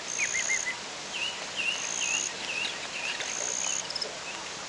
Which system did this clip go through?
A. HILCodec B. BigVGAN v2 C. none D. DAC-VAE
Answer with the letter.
C